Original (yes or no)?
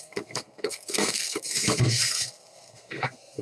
no